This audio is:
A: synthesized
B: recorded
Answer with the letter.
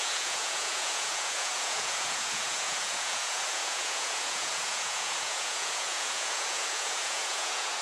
A